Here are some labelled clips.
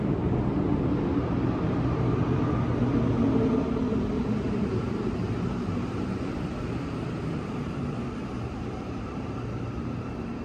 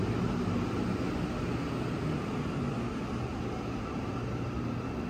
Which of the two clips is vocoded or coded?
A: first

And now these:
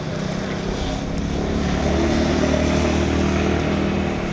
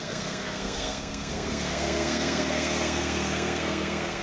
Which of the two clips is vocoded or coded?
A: second